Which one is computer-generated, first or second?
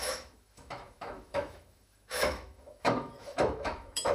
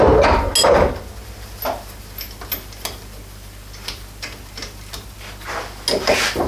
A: first